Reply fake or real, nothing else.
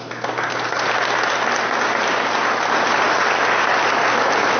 real